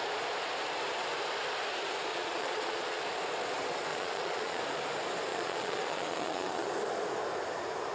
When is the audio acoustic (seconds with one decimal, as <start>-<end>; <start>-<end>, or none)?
0.0-2.1; 3.0-3.9; 4.6-5.3; 6.7-7.9